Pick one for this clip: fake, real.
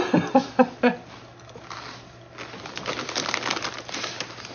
real